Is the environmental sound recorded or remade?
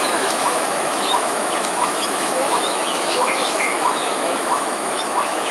remade